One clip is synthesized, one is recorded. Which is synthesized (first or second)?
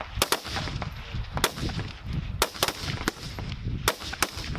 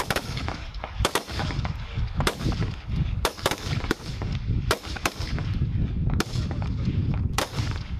second